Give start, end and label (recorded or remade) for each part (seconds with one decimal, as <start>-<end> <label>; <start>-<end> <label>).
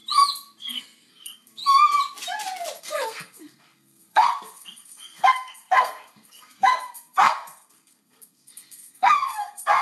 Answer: 0.0-0.6 recorded; 0.6-1.6 remade; 1.6-2.8 recorded; 2.8-9.8 remade